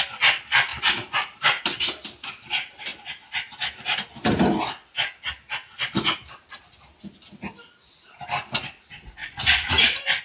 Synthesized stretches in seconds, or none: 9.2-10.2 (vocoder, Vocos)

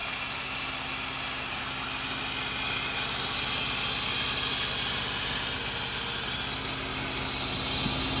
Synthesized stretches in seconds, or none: none

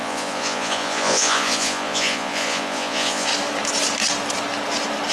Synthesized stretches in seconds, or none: 0.0-3.3 (vocoder, Vocos)

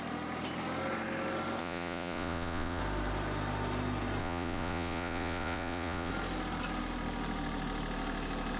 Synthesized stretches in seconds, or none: 1.6-2.8 (vocoder, Vocos); 4.2-6.1

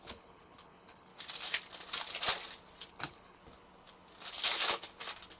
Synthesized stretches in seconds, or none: 0.0-1.1 (codec, HILCodec); 2.9-3.4

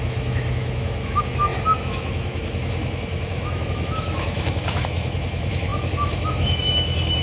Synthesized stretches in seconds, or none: 0.0-7.2 (autoencoder, DAC-VAE)